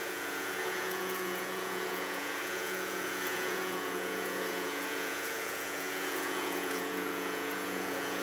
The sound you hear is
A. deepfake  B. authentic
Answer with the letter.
A